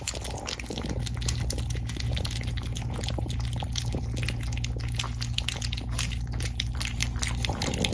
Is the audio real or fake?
real